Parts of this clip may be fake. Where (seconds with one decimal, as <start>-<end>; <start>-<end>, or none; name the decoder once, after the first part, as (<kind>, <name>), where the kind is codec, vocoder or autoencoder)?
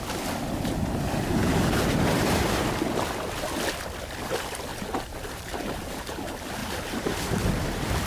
1.4-2.8 (vocoder, BigVGAN v2); 4.7-5.9; 6.6-7.1